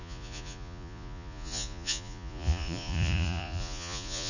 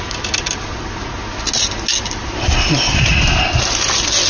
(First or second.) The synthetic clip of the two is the first